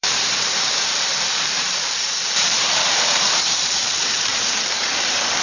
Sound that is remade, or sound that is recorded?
remade